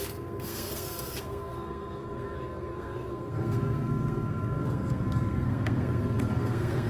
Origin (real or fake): fake